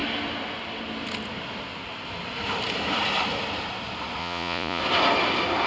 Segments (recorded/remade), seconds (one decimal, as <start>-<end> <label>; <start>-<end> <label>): 0.0-4.2 recorded; 4.2-4.8 remade; 4.8-5.7 recorded